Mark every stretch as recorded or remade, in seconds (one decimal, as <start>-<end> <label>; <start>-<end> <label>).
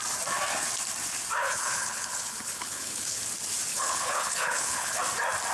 0.0-1.4 recorded; 1.4-3.2 remade; 3.2-3.7 recorded; 3.7-5.0 remade; 5.0-5.5 recorded